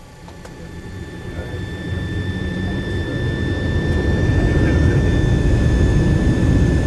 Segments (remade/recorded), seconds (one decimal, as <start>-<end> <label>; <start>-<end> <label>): 0.0-3.1 remade; 3.1-6.4 recorded; 6.4-6.9 remade

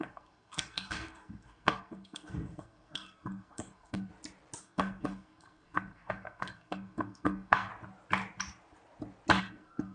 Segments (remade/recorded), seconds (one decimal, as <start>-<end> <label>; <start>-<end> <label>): 0.0-4.1 remade; 4.1-4.6 recorded; 4.6-7.7 remade; 7.7-9.4 recorded; 9.4-9.9 remade

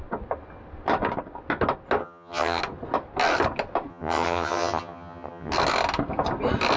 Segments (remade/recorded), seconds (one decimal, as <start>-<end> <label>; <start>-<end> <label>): 0.0-2.0 recorded; 2.0-2.6 remade; 2.6-3.9 recorded; 3.9-5.5 remade; 5.5-6.8 recorded

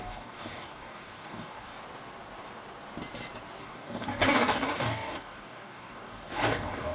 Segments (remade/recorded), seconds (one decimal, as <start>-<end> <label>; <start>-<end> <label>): 0.0-1.7 remade; 1.7-3.6 recorded; 3.6-6.9 remade

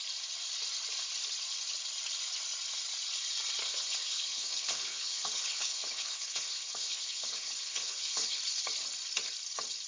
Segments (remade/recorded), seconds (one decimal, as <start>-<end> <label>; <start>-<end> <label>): 0.0-3.6 recorded; 3.6-8.4 remade; 8.4-9.9 recorded

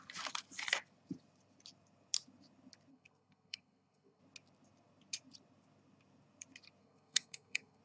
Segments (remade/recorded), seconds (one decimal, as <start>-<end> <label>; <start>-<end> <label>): 0.0-2.9 recorded; 2.9-4.2 remade; 4.2-6.8 recorded; 6.8-7.8 remade

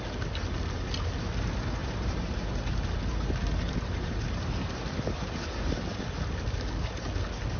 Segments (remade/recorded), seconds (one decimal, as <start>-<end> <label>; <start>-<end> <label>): 0.0-1.8 recorded; 1.8-6.0 remade; 6.0-7.6 recorded

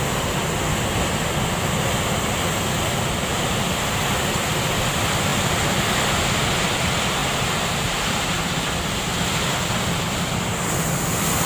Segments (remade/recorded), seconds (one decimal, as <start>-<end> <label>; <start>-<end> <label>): 0.0-3.3 recorded; 3.3-4.0 remade; 4.0-7.2 recorded; 7.2-10.7 remade; 10.7-11.5 recorded